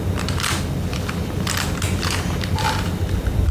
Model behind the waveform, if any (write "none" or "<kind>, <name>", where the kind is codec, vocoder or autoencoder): vocoder, BigVGAN v2